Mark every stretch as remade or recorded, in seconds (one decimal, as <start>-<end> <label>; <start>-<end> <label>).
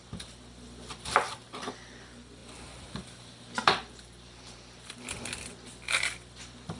0.0-2.4 recorded; 2.4-4.9 remade; 4.9-6.8 recorded